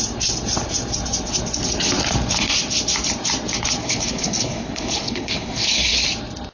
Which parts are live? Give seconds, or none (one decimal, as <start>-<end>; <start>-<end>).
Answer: 0.0-3.8; 6.0-6.5